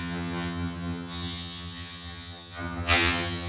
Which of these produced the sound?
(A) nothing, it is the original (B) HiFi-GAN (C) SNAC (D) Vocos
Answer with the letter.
B